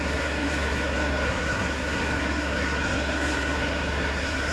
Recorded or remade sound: remade